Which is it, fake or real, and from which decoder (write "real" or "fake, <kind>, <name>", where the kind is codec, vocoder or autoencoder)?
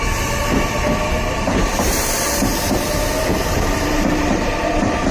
fake, vocoder, BigVGAN v2